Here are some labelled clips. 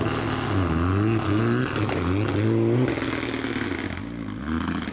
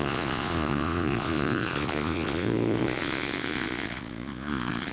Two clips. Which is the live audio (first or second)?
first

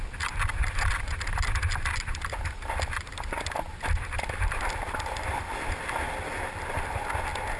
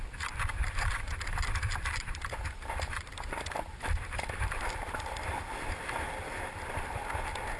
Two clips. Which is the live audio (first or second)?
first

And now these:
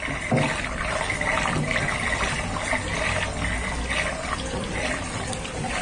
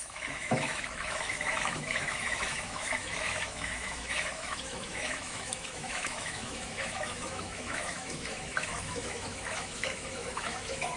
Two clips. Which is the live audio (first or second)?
first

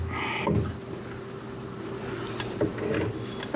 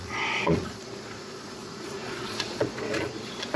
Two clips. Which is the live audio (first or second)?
first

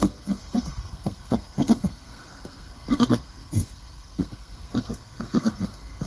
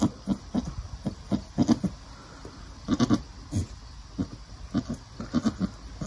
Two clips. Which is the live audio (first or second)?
second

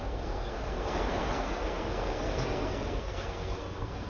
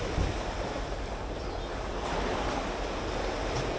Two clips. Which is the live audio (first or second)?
second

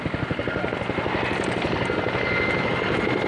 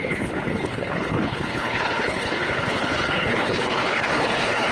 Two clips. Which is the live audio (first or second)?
first